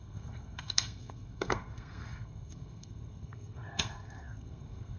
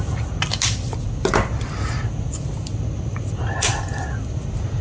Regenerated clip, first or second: first